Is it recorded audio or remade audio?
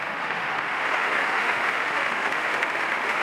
remade